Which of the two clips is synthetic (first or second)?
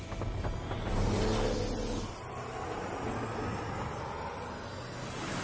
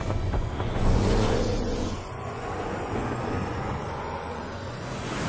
second